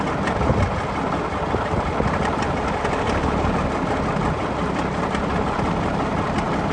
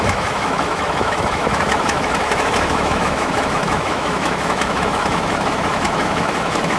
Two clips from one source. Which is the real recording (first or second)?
first